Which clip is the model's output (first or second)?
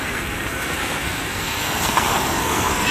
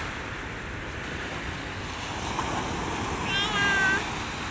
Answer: first